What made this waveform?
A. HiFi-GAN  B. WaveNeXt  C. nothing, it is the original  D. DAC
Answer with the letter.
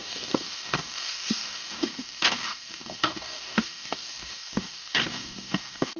D